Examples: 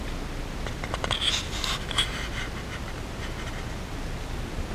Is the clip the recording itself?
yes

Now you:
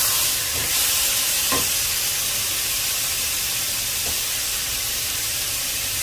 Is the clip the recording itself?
yes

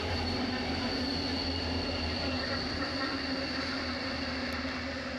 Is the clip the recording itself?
yes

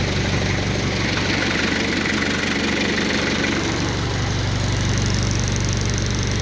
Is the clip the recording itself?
yes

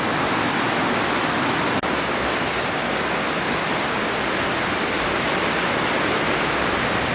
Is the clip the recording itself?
yes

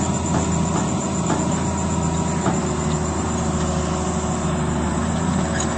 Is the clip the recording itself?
yes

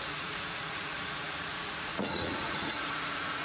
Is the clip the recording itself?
no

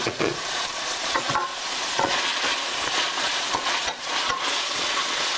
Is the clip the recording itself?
no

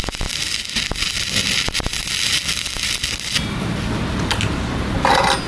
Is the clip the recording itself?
yes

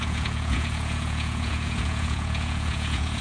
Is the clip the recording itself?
no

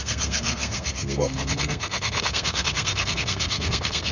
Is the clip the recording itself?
no